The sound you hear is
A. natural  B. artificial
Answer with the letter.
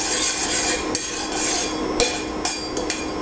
A